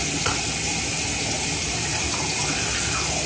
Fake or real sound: real